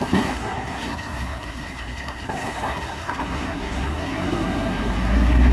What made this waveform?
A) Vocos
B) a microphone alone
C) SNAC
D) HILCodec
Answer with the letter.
C